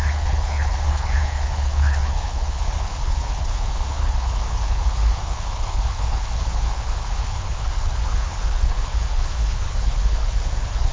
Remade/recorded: remade